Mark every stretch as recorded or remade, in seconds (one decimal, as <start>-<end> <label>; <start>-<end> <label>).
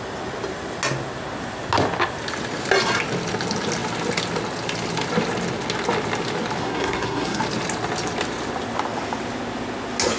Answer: 0.0-6.6 recorded; 6.6-7.4 remade; 7.4-10.2 recorded